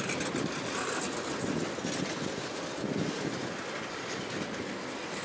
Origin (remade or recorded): recorded